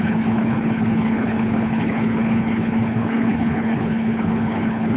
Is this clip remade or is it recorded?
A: remade